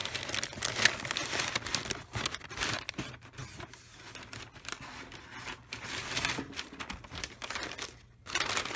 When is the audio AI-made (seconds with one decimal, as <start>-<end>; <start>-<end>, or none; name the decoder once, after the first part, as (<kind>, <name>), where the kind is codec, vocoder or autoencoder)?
none